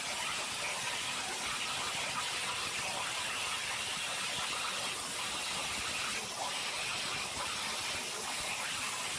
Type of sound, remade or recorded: recorded